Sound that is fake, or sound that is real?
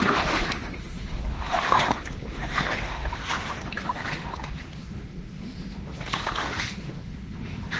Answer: fake